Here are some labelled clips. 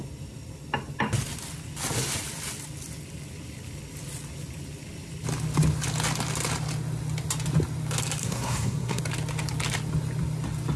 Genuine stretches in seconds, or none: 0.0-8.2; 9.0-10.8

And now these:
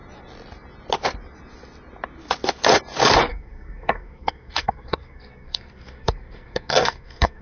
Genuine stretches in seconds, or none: 0.0-3.3